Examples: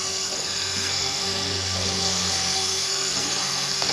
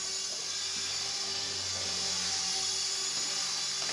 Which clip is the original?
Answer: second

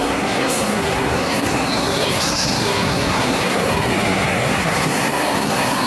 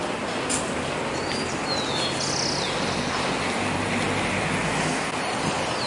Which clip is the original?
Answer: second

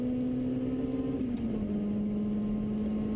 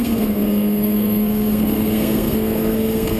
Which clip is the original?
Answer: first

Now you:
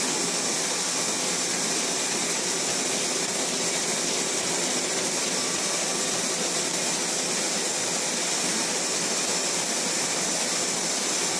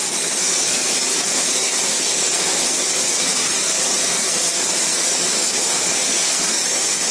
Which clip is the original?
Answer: first